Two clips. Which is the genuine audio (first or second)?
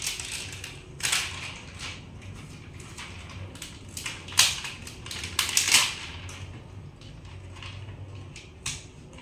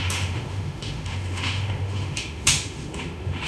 first